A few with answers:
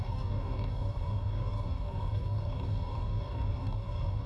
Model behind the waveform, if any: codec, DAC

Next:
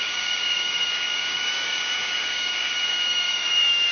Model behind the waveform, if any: codec, DAC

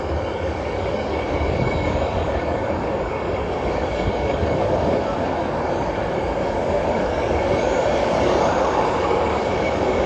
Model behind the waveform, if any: codec, DAC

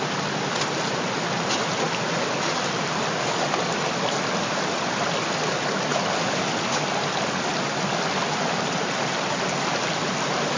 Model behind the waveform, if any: none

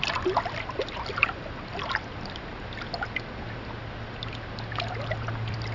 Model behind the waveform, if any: none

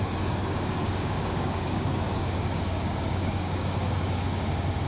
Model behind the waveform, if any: codec, DAC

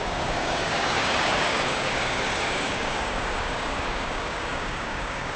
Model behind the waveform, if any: codec, DAC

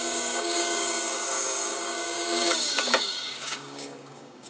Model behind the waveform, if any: codec, DAC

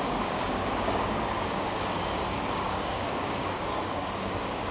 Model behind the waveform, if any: codec, DAC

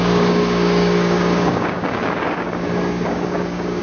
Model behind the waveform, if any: codec, DAC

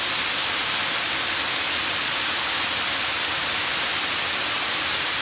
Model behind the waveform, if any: none